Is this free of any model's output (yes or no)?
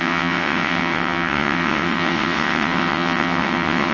no